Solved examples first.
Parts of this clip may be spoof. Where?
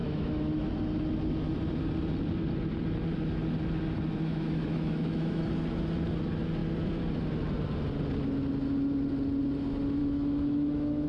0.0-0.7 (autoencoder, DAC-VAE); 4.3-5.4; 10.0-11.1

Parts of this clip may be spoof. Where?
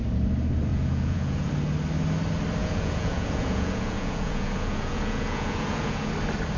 0.7-1.5 (vocoder, Vocos); 2.6-6.1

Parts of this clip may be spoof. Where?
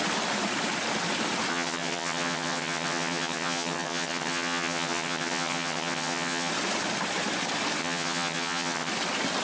1.5-6.5 (vocoder, HiFi-GAN); 7.8-8.9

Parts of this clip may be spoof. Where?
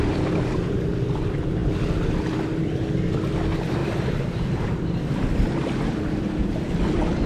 3.8-4.6 (vocoder, BigVGAN v2)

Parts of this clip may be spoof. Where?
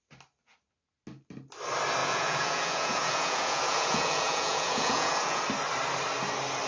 2.0-5.4 (vocoder, Vocos)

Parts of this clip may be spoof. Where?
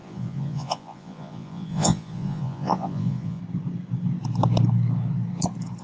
0.0-3.4 (vocoder, Vocos)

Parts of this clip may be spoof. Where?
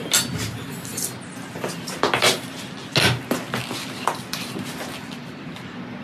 none